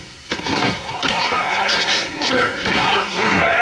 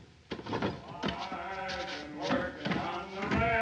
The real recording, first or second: second